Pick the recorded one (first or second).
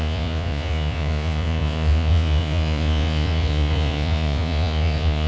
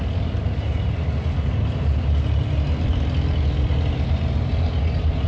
second